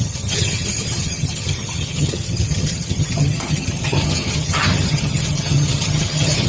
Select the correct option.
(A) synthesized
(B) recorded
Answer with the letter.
A